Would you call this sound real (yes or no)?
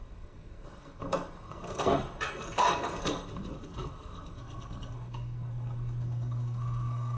no